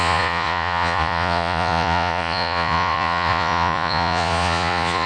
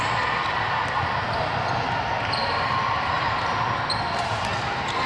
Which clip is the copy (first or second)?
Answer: first